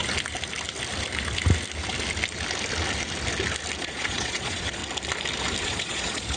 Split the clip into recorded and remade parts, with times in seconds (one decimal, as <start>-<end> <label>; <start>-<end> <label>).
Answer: 0.0-3.8 recorded; 3.8-4.8 remade; 4.8-5.6 recorded; 5.6-6.4 remade